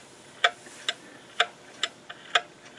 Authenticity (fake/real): real